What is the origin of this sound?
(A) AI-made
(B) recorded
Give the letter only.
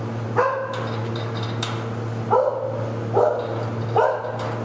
B